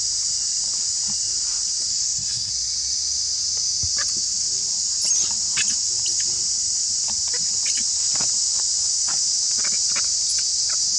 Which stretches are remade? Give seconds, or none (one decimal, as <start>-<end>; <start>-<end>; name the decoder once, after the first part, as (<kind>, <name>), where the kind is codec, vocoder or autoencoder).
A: 1.9-2.5 (codec, SNAC)